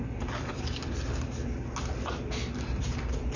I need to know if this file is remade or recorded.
recorded